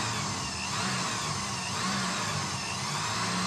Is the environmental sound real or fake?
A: real